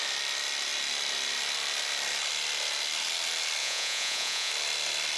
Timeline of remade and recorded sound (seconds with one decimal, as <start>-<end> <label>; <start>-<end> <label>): 0.0-3.6 recorded; 3.6-4.5 remade; 4.5-5.2 recorded